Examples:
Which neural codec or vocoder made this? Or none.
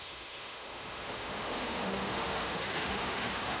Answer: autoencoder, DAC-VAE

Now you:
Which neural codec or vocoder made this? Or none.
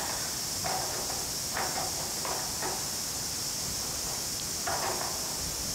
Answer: none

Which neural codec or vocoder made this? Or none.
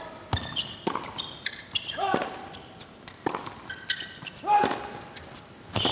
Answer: none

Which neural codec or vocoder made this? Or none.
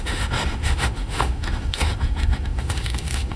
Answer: autoencoder, DAC-VAE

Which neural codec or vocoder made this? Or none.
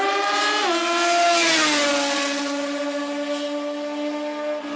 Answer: none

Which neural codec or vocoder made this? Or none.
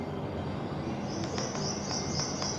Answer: none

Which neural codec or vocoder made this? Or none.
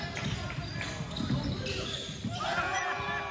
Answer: none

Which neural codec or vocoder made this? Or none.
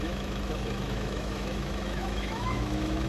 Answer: autoencoder, DAC-VAE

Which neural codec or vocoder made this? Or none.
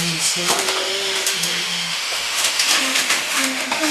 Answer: autoencoder, DAC-VAE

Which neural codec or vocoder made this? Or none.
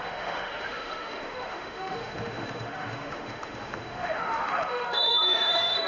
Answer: autoencoder, DAC-VAE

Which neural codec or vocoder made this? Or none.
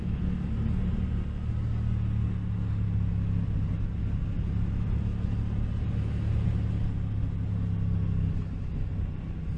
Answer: none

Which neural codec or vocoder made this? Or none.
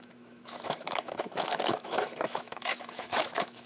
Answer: autoencoder, DAC-VAE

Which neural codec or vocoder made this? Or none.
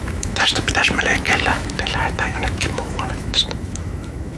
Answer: autoencoder, DAC-VAE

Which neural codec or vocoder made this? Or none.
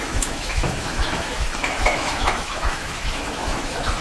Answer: autoencoder, DAC-VAE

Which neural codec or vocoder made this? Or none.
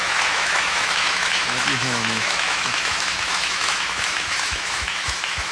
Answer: autoencoder, DAC-VAE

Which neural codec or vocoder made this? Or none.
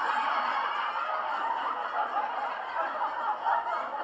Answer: none